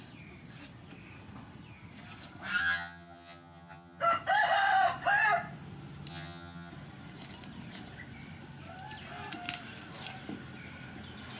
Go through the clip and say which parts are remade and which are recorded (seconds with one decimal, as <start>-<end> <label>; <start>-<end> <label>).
0.0-2.6 recorded; 2.6-4.0 remade; 4.0-6.1 recorded; 6.1-6.7 remade; 6.7-11.4 recorded